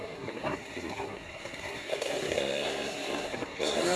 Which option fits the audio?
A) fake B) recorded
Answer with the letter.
A